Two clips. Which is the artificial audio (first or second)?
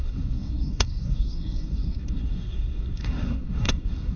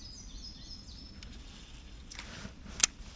first